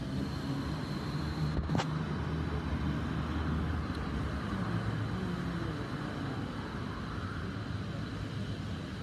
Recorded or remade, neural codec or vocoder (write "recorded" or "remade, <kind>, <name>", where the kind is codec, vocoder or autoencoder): recorded